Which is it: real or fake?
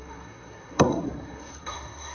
fake